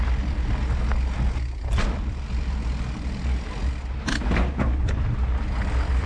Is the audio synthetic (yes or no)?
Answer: no